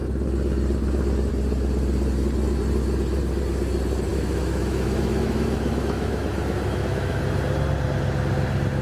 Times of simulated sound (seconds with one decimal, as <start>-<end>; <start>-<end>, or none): 4.1-7.2